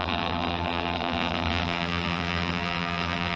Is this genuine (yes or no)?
no